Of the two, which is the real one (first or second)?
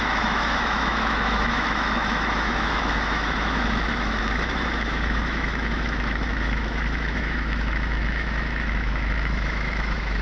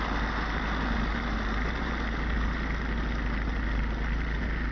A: second